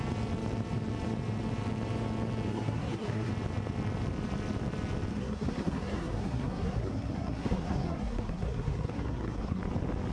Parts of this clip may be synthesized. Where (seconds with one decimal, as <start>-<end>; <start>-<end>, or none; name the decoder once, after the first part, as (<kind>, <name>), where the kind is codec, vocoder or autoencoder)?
2.5-3.3 (codec, SNAC); 5.1-9.6